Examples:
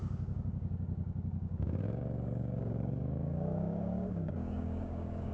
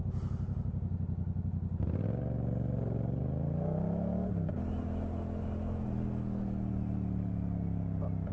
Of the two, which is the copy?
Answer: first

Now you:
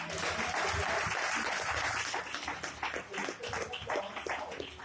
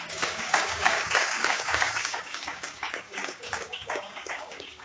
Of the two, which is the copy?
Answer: second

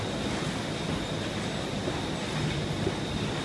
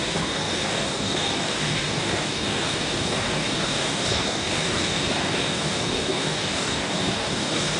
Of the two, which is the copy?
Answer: second